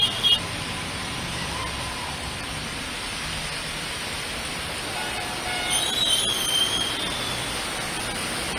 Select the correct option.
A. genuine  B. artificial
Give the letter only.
B